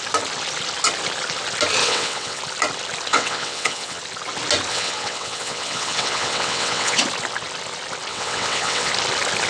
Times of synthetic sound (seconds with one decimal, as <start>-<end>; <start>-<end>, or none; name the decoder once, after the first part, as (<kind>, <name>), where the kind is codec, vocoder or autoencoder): 1.8-2.4 (vocoder, WaveNeXt); 3.1-4.0; 4.7-7.0; 8.1-8.9